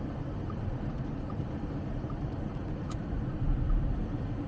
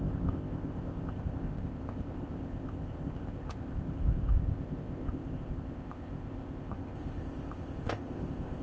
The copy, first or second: second